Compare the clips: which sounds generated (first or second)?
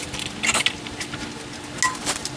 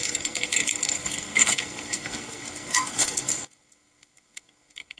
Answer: second